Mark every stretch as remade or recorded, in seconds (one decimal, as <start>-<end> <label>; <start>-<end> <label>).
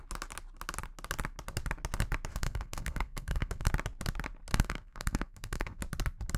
0.0-2.3 recorded; 2.3-3.7 remade; 3.7-4.5 recorded; 4.5-5.8 remade; 5.8-6.4 recorded